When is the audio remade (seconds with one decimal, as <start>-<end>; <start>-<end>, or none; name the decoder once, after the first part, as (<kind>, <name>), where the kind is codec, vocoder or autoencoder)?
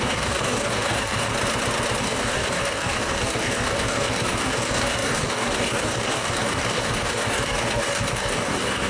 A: 0.0-1.3 (codec, DAC); 2.0-8.9